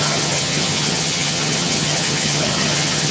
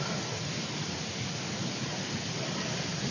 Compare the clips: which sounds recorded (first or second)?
second